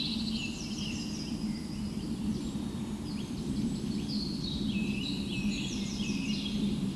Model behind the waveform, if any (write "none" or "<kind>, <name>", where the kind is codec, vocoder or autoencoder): vocoder, BigVGAN v2